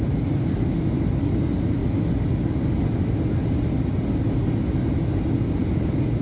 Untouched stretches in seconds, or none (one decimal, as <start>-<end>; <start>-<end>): 0.0-6.2